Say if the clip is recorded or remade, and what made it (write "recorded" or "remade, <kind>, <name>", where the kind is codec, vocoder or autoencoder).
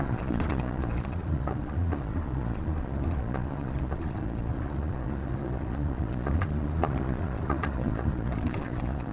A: remade, vocoder, Vocos